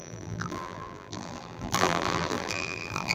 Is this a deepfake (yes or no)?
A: yes